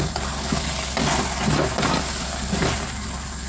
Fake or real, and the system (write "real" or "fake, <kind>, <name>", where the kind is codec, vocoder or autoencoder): real